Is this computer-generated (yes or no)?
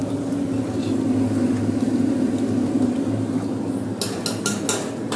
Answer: no